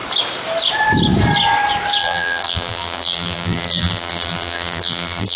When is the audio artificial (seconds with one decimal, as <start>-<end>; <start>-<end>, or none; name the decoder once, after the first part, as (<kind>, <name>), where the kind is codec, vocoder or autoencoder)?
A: 2.0-5.4 (vocoder, BigVGAN v2)